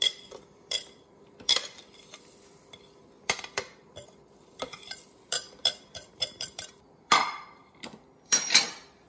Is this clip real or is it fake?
fake